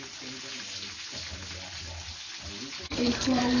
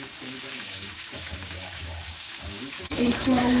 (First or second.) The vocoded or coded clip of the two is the second